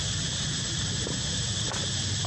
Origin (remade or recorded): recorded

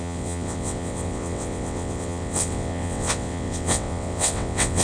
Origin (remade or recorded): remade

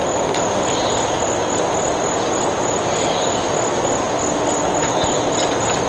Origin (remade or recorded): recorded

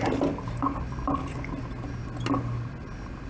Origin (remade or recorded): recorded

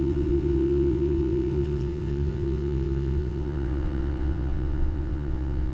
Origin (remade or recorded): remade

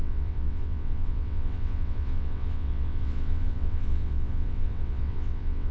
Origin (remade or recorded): remade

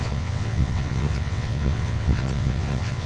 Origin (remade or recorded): remade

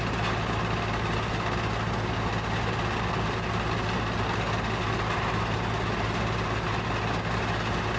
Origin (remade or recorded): recorded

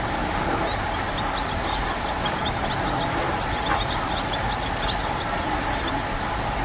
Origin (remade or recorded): recorded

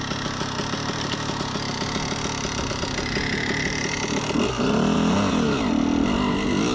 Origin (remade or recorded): recorded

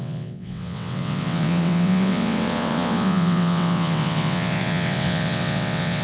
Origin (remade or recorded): remade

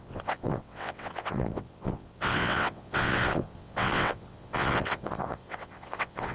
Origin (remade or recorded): remade